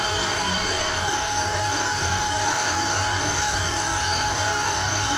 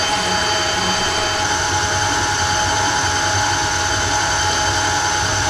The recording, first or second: second